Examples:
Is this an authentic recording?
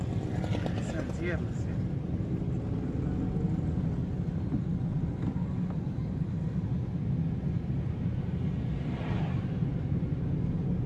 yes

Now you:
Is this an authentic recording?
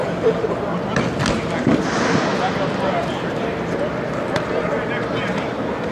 yes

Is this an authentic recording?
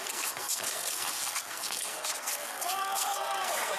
no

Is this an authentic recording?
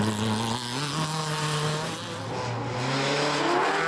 yes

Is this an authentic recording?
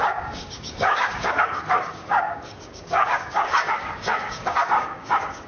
no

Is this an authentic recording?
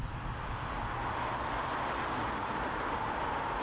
yes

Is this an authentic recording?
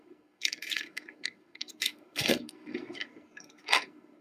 no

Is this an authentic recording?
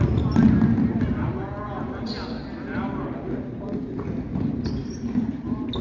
yes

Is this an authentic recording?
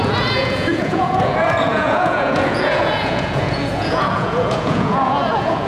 no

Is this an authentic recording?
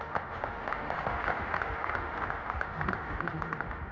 no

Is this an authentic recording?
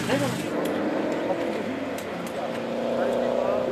yes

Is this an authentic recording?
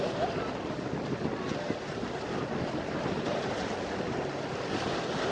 yes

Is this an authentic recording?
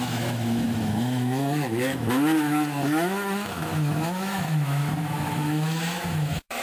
no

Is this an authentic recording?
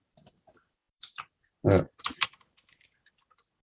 no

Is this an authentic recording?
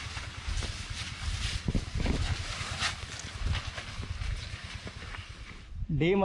yes